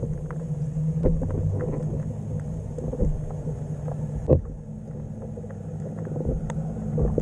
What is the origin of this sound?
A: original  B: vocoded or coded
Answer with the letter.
A